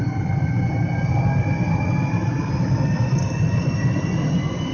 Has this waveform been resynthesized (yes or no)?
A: no